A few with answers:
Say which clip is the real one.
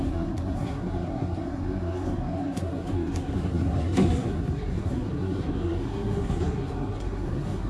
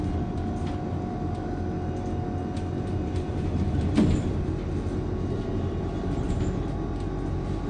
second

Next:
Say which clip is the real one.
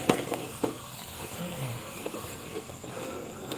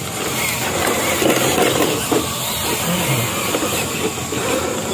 second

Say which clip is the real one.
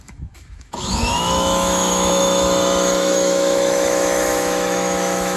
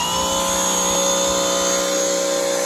second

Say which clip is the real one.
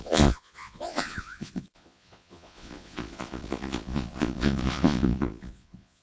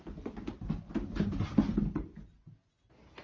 second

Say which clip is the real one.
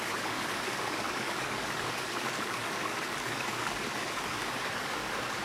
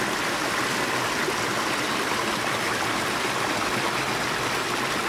second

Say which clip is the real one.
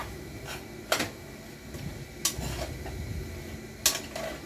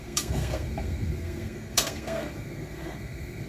first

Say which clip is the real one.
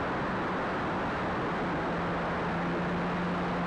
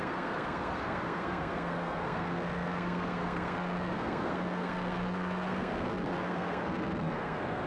first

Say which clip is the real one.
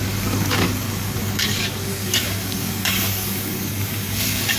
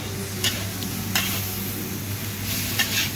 second